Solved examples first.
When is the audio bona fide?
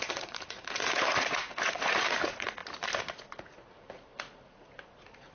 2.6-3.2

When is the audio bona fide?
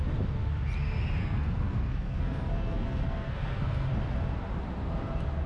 0.0-1.2; 3.9-5.5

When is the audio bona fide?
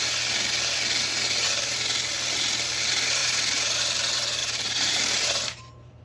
0.0-3.2; 3.8-4.4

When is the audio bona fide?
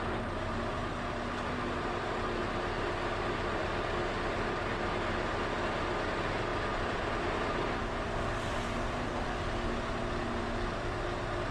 0.0-6.5; 7.2-11.5